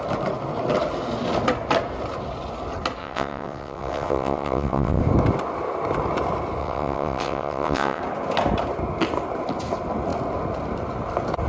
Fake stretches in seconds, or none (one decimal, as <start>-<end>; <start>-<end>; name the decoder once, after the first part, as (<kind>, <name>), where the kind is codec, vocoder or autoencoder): 3.0-5.0 (vocoder, WaveNeXt); 6.6-8.0